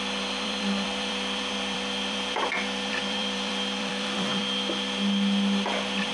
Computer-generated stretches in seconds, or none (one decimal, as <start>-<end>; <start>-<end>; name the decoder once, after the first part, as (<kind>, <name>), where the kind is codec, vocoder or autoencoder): 0.0-4.4 (vocoder, BigVGAN v2)